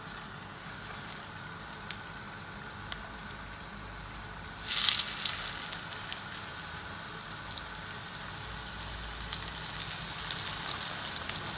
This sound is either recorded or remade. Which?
recorded